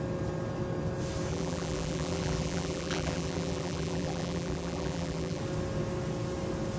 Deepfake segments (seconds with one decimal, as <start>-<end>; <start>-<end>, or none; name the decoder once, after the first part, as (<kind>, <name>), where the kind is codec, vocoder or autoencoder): 1.3-5.4 (vocoder, BigVGAN v2)